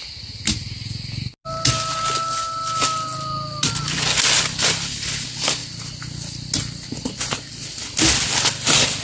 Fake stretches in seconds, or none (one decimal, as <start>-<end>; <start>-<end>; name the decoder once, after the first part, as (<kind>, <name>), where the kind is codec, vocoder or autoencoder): none